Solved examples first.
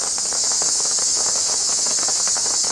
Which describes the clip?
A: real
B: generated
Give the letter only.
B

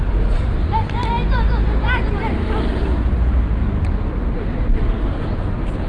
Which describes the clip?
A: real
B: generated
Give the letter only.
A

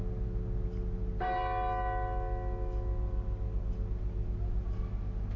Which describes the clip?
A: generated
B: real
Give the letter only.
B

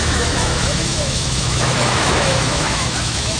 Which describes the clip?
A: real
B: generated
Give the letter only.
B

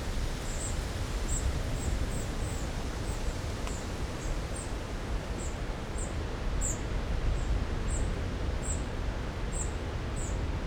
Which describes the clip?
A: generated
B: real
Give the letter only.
B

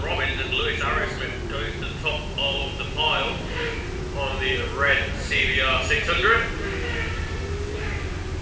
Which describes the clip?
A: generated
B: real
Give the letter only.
B